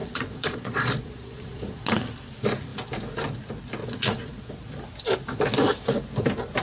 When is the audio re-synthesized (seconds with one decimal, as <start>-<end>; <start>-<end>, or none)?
0.0-2.1; 3.8-4.5

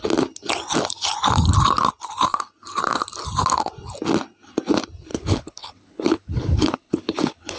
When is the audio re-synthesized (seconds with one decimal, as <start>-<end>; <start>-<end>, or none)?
5.1-7.6

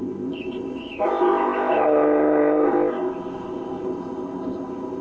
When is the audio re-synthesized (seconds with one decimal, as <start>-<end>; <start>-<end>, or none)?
0.0-5.0

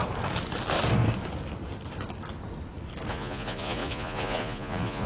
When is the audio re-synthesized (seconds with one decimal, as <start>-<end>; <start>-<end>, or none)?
3.1-5.1

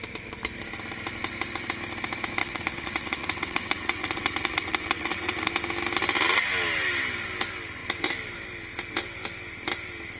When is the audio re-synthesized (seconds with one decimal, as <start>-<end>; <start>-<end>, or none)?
2.4-5.5